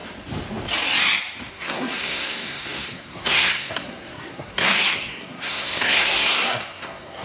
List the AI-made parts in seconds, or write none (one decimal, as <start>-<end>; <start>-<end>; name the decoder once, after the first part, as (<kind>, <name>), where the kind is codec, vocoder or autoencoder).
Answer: 1.5-7.2 (codec, SNAC)